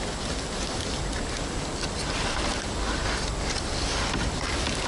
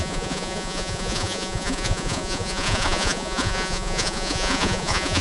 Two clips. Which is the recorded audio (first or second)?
first